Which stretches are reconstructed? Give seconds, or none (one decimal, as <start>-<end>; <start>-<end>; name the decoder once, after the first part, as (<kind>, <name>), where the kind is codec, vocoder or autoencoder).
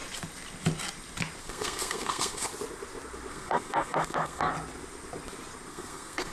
1.4-2.5 (codec, SNAC); 3.3-4.5; 5.7-6.3